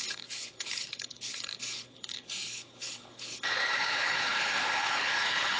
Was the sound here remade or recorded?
remade